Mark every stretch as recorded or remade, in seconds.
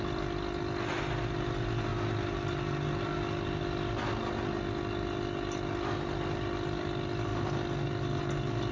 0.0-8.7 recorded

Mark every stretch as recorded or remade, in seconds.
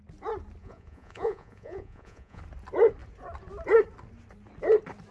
0.0-0.6 recorded; 0.6-2.4 remade; 2.4-5.1 recorded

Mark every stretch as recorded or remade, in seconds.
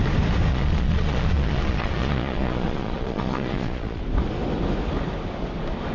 0.0-0.5 recorded; 0.5-4.0 remade; 4.0-5.9 recorded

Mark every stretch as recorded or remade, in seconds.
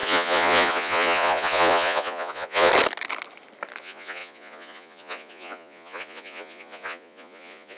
0.0-2.7 remade; 2.7-3.8 recorded; 3.8-7.8 remade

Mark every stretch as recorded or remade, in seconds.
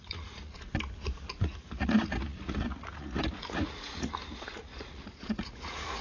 0.0-0.7 remade; 0.7-1.4 recorded; 1.4-6.0 remade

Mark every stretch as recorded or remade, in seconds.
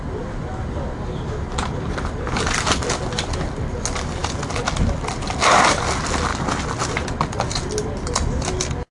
0.0-8.9 recorded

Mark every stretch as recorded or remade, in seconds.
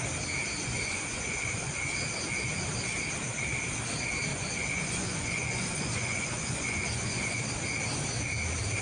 0.0-0.6 recorded; 0.6-1.8 remade; 1.8-4.3 recorded; 4.3-7.4 remade; 7.4-8.8 recorded